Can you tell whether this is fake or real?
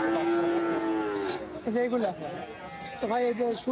real